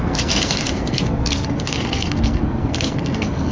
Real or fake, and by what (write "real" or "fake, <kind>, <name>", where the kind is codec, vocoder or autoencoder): fake, codec, SNAC